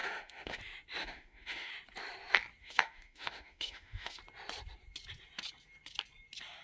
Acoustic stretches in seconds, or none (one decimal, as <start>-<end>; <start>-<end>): 0.6-1.0; 1.7-2.6; 4.2-6.6